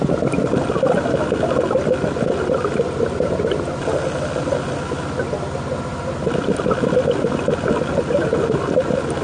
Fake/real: real